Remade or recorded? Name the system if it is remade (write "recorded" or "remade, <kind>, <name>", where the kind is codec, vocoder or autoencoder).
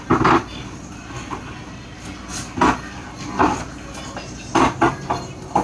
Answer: recorded